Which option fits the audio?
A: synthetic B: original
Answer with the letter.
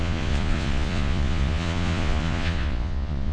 A